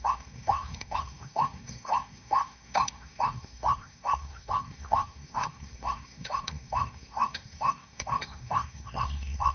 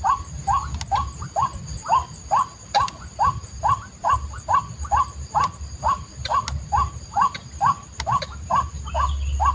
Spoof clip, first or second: first